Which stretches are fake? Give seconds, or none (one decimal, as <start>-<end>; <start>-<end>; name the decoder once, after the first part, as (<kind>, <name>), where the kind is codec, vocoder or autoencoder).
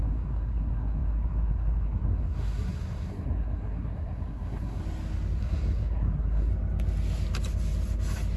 0.0-4.8 (codec, SNAC); 5.4-6.5